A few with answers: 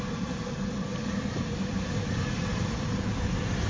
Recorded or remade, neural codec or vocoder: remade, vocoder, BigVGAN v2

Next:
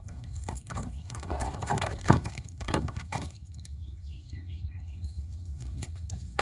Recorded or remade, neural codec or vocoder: remade, codec, SNAC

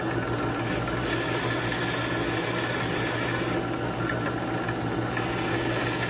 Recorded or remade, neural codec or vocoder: recorded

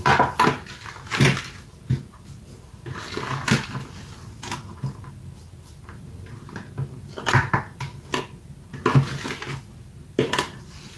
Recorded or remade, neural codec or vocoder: recorded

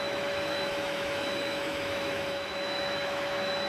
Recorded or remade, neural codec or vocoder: remade, autoencoder, DAC-VAE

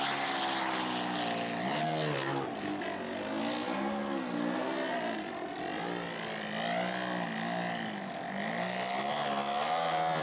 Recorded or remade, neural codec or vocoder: recorded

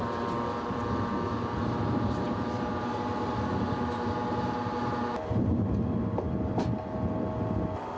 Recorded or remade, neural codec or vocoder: recorded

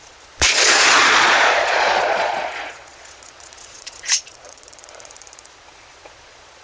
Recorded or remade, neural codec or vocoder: remade, vocoder, Vocos